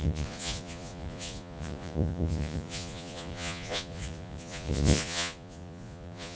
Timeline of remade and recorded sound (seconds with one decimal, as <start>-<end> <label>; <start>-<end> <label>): 0.0-6.4 remade